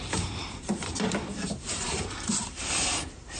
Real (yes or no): no